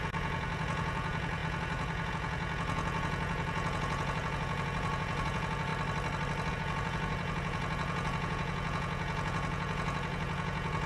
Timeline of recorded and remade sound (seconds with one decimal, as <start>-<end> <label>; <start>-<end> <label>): 0.0-5.7 remade; 5.7-6.5 recorded; 6.5-10.9 remade